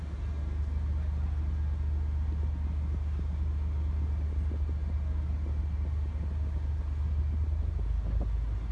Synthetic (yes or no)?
no